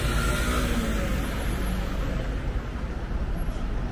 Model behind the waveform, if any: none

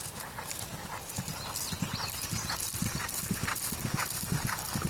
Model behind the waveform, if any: none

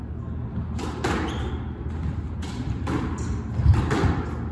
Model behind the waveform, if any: none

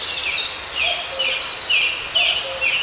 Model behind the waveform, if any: none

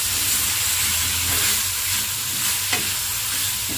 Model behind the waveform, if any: none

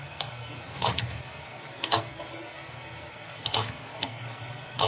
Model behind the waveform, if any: codec, SNAC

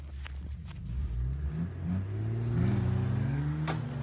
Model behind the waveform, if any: none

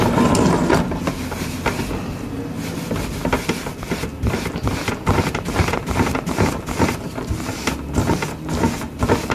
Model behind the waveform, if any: none